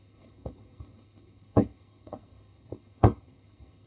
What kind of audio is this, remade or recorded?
remade